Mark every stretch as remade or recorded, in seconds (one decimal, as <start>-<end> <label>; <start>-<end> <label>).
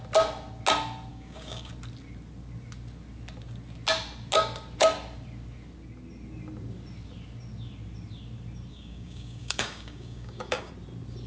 0.0-1.1 recorded; 1.1-1.7 remade; 1.7-8.7 recorded; 8.7-10.7 remade; 10.7-11.3 recorded